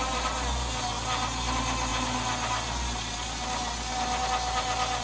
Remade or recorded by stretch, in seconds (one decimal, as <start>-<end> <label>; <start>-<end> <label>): 0.0-5.0 recorded